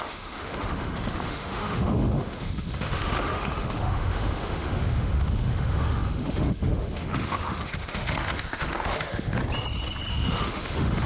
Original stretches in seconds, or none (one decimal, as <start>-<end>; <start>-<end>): 9.4-10.1